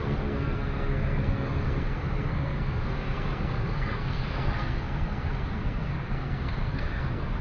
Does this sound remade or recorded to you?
remade